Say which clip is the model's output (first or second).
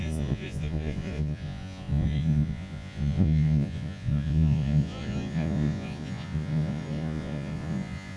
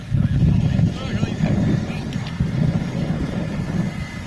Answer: first